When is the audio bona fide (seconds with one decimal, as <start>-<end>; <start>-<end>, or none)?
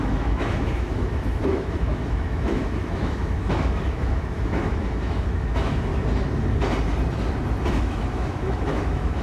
5.9-7.7